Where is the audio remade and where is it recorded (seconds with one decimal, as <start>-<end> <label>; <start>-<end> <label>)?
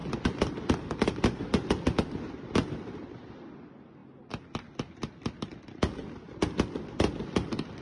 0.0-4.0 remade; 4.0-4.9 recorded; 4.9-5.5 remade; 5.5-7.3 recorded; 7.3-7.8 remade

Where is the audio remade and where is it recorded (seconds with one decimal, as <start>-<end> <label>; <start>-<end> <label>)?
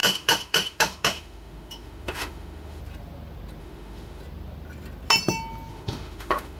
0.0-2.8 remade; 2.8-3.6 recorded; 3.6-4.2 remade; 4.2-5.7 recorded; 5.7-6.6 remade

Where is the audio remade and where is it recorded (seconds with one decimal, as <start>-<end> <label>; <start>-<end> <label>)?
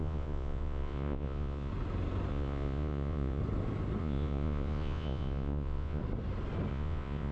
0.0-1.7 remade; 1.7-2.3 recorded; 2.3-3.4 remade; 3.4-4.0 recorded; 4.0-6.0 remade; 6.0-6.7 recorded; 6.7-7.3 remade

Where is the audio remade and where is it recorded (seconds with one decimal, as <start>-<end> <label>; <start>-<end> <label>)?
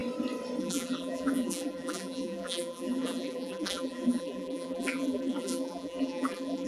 0.0-0.6 recorded; 0.6-6.7 remade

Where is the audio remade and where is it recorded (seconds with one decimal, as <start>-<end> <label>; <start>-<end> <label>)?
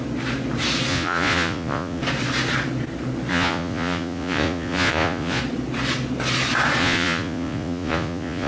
0.0-0.9 recorded; 0.9-2.0 remade; 2.0-3.3 recorded; 3.3-5.4 remade; 5.4-6.8 recorded; 6.8-8.5 remade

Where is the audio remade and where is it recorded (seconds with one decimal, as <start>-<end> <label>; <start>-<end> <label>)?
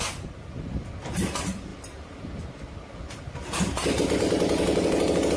0.0-5.4 recorded